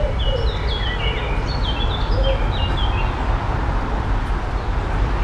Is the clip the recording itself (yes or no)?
yes